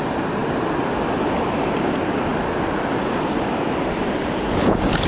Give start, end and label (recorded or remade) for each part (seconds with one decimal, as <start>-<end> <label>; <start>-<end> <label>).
0.0-5.1 recorded